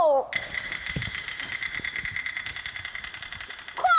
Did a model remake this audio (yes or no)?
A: no